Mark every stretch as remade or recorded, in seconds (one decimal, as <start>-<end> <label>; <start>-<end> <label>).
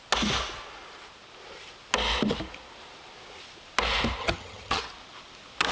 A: 0.0-4.2 recorded; 4.2-4.8 remade; 4.8-5.7 recorded